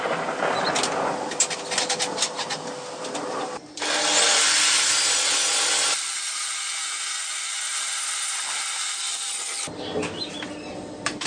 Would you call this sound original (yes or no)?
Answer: yes